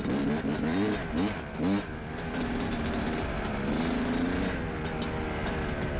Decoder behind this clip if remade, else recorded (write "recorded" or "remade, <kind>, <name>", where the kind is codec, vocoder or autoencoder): recorded